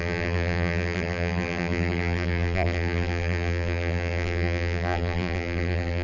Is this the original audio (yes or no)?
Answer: no